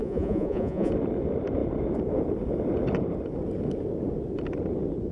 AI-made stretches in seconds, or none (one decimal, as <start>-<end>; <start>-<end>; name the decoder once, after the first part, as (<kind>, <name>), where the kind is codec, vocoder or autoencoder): 0.0-0.9 (vocoder, Vocos)